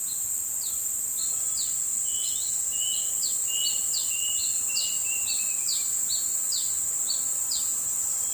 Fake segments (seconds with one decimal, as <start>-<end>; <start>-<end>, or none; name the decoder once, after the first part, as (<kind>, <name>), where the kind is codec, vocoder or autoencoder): 4.5-6.0 (vocoder, BigVGAN v2)